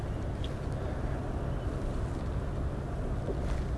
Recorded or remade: recorded